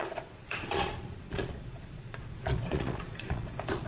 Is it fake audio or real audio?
fake